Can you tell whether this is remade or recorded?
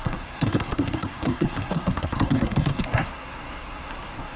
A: remade